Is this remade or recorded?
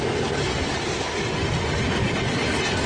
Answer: recorded